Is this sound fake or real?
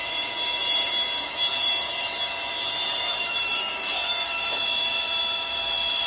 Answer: fake